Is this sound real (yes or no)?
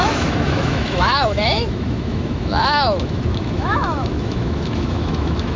no